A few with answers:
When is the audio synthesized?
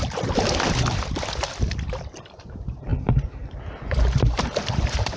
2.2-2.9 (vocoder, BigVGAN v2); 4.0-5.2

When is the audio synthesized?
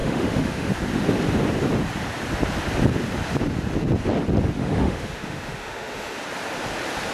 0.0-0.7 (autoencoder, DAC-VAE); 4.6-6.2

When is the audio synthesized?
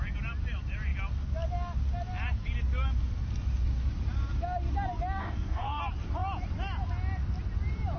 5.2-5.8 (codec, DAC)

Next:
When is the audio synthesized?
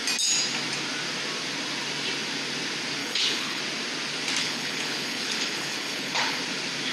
3.0-3.6 (codec, HILCodec); 4.4-6.4